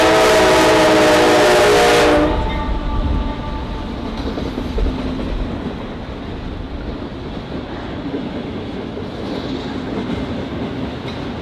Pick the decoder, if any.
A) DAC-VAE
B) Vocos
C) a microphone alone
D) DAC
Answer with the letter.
C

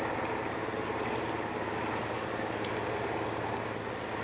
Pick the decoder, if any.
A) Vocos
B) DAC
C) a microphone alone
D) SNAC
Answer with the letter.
C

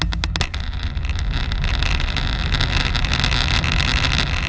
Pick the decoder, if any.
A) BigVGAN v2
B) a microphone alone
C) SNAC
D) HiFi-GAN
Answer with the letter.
B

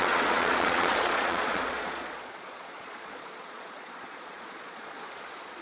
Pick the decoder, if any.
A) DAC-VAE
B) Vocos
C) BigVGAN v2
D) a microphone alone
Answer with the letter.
B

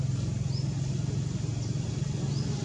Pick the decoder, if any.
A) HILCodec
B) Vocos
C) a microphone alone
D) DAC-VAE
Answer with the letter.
C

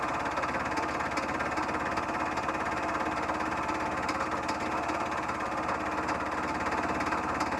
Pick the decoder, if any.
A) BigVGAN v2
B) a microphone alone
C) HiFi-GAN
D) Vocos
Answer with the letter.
B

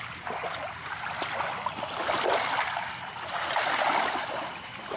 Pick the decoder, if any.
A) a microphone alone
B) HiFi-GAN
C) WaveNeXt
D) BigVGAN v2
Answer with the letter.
D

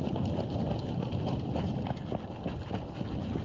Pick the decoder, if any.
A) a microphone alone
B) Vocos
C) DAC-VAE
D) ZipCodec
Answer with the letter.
A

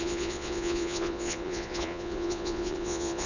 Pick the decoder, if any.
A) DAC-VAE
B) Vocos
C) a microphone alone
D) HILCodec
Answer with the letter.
B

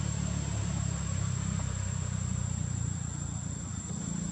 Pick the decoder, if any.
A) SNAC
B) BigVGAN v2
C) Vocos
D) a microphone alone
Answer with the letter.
B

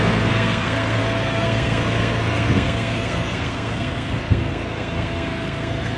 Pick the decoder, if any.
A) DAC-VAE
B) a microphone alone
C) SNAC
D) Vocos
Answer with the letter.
C